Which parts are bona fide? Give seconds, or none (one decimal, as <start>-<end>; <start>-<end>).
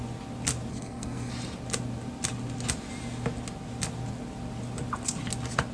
0.0-0.7; 1.3-5.7